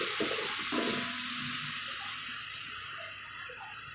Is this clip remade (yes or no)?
no